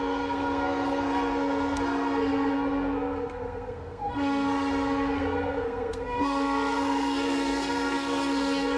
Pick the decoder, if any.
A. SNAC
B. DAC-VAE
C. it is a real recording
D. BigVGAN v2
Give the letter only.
A